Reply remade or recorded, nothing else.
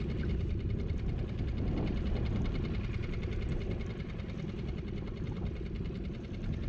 recorded